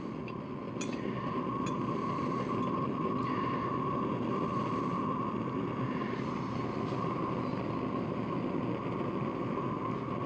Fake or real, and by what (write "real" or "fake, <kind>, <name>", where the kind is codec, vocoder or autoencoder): real